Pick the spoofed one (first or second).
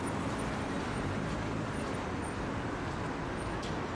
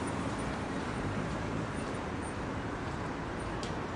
second